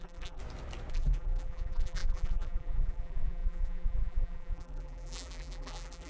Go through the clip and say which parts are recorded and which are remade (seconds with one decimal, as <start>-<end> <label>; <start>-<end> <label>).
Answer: 0.0-0.4 remade; 0.4-0.9 recorded; 0.9-6.1 remade